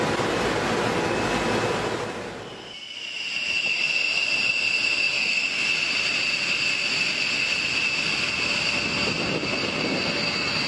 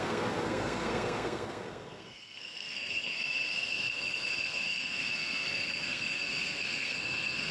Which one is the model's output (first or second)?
second